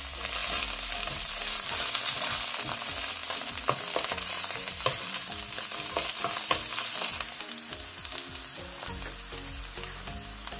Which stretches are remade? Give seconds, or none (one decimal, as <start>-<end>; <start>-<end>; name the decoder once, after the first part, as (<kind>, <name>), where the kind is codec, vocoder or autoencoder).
0.4-2.3 (vocoder, BigVGAN v2); 3.2-7.9